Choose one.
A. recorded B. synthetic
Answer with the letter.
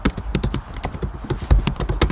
A